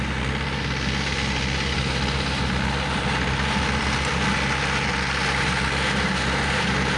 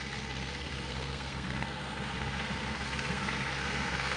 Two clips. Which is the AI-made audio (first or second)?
second